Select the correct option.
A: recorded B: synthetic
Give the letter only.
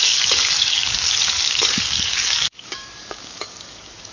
B